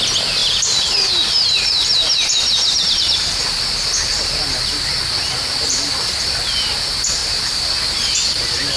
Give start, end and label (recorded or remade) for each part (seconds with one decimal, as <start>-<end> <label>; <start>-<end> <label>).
0.0-0.4 recorded; 0.4-4.4 remade; 4.4-7.2 recorded; 7.2-8.8 remade